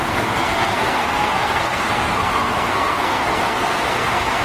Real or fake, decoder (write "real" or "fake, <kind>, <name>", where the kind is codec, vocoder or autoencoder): fake, codec, SNAC